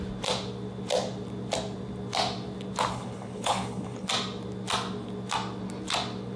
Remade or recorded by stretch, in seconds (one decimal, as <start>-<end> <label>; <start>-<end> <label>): 0.0-2.9 recorded; 2.9-4.1 remade; 4.1-6.4 recorded